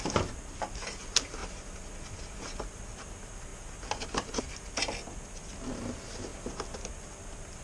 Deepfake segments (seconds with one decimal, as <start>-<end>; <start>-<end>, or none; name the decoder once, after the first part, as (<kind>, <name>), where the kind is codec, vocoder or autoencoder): none